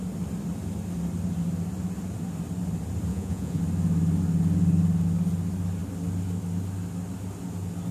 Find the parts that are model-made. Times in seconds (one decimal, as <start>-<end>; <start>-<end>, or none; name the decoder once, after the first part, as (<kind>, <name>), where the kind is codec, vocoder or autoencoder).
3.1-3.6 (vocoder, Vocos)